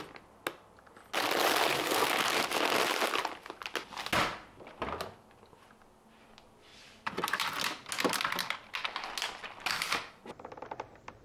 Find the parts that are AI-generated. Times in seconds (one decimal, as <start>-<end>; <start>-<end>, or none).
6.7-7.5

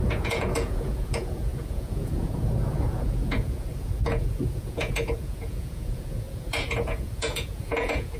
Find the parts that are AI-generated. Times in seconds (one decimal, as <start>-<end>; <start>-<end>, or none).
0.0-8.2

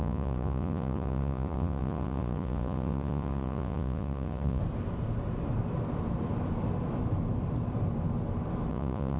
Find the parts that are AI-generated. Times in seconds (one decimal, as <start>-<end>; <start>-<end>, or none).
0.0-4.6; 8.7-9.2

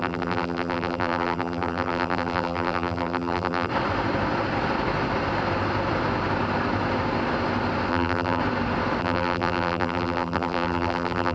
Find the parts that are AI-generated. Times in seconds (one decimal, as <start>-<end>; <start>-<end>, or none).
0.0-3.7; 7.9-8.4; 9.0-11.3

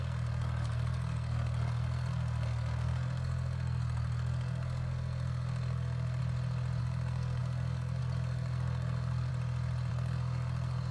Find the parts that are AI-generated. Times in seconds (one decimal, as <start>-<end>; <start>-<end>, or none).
0.0-6.2; 6.8-9.3; 9.9-10.9